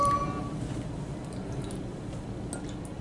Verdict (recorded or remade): recorded